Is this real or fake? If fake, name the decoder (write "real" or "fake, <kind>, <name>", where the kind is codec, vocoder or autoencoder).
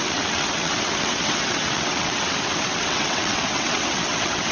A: fake, vocoder, WaveNeXt